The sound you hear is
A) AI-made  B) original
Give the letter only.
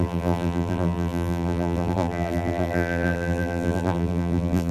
A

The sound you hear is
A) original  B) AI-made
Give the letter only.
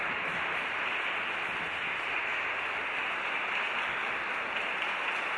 A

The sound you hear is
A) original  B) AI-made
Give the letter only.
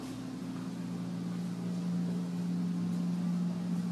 A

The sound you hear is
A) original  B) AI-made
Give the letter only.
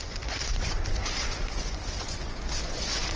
B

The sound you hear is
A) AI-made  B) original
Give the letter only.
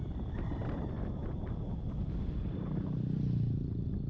B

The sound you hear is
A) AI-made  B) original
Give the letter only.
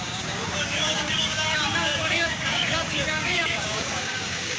A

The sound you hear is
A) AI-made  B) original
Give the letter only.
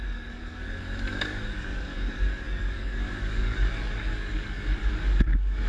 A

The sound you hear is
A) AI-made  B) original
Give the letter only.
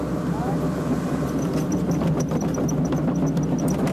B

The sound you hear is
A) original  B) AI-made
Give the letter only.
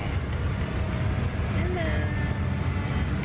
A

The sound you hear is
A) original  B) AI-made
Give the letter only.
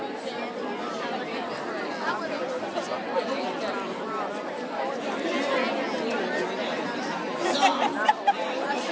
A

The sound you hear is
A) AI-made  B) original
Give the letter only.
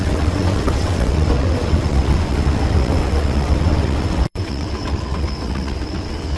A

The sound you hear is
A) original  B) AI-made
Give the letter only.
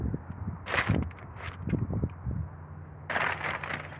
A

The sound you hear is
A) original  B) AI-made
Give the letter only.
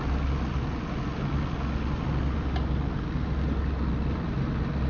A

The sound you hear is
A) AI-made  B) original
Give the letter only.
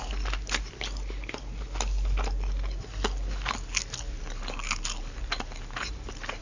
B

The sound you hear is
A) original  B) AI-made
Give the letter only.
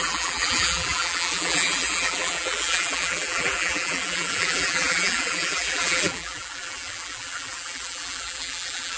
B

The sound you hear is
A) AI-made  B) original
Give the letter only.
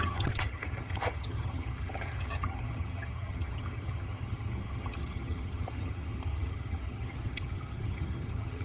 A